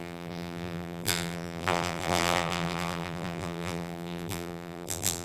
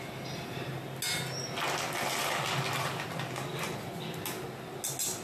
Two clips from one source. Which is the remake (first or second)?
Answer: first